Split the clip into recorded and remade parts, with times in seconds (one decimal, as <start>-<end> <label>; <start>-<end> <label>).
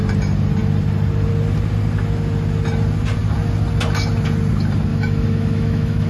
0.0-4.9 recorded; 4.9-6.1 remade